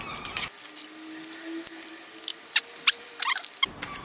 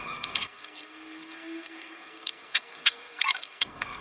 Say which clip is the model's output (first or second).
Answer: second